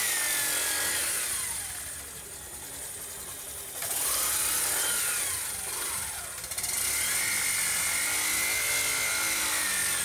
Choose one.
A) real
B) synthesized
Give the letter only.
A